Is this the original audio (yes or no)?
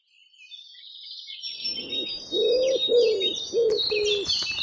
yes